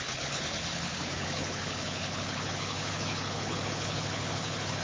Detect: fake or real fake